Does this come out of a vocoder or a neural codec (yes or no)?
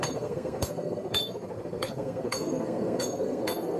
yes